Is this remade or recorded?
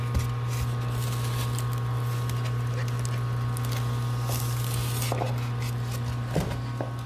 recorded